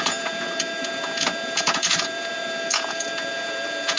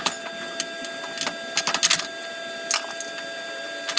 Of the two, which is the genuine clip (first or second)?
second